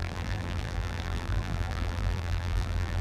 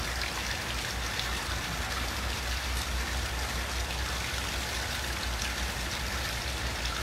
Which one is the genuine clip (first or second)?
second